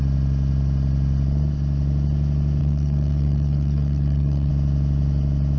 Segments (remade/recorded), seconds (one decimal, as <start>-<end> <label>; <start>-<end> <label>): 0.0-2.6 recorded; 2.6-4.5 remade; 4.5-5.6 recorded